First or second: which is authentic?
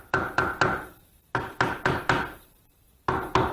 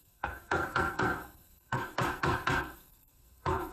first